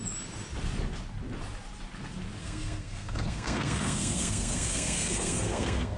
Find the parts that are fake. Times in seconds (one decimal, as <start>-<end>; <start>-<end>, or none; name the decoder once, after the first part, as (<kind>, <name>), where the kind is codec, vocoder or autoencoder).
2.4-6.0 (codec, SNAC)